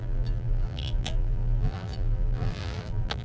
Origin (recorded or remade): remade